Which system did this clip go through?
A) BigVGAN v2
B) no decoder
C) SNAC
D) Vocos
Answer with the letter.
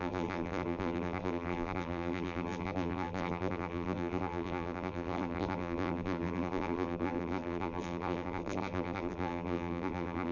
A